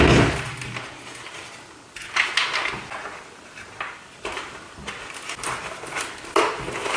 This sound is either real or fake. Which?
real